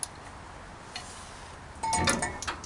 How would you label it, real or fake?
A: real